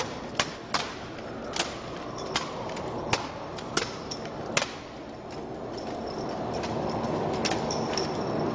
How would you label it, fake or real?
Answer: real